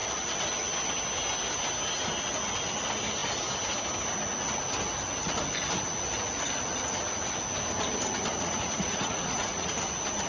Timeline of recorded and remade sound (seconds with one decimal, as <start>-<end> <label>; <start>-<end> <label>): 0.0-8.3 recorded; 8.3-9.7 remade; 9.7-10.3 recorded